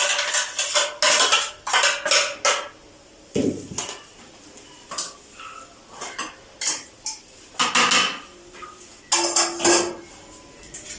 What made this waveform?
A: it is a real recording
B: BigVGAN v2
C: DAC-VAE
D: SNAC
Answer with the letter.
A